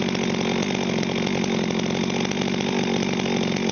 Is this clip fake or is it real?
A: real